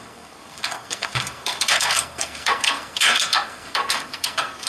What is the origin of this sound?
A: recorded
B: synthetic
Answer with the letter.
B